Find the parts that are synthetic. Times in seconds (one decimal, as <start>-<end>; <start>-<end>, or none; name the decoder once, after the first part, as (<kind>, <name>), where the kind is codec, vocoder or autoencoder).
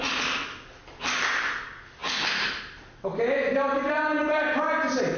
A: none